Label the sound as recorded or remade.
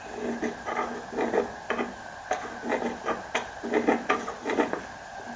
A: recorded